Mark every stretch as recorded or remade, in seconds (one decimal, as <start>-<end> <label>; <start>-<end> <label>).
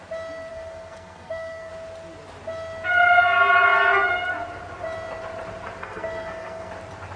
0.0-0.5 recorded; 0.5-1.7 remade; 1.7-5.8 recorded; 5.8-6.7 remade; 6.7-7.2 recorded